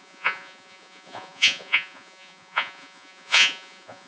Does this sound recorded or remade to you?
remade